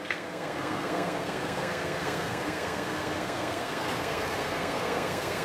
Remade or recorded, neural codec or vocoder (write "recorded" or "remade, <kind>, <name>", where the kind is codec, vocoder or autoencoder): remade, codec, SNAC